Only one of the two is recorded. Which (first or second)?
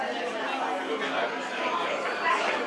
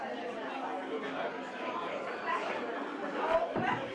first